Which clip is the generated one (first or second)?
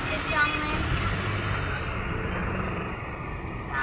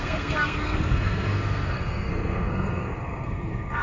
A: second